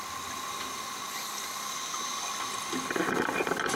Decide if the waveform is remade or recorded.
recorded